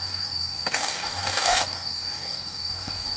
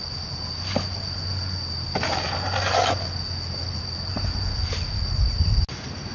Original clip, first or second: second